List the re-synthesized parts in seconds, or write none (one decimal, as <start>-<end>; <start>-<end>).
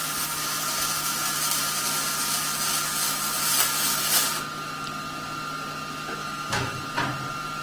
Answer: 6.2-6.8